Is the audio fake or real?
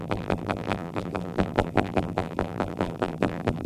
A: fake